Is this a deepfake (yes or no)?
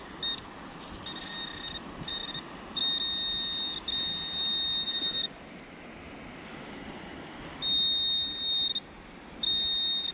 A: no